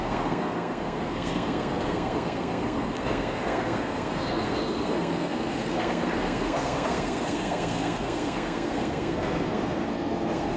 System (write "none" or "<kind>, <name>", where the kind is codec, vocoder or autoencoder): codec, SNAC